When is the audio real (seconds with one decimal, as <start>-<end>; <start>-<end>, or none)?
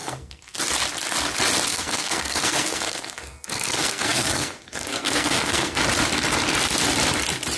0.6-1.7; 5.8-7.6